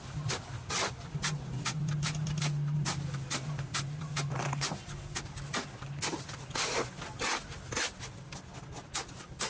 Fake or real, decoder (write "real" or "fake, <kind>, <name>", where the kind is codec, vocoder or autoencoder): real